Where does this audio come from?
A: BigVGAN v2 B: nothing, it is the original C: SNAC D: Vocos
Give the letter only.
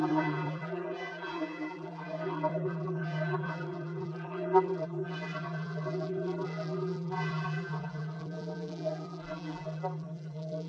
A